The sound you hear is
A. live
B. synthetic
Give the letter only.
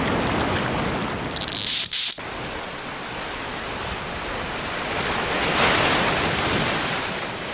A